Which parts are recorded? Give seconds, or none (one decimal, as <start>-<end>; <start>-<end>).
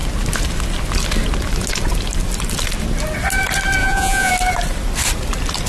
0.0-3.8; 4.3-5.7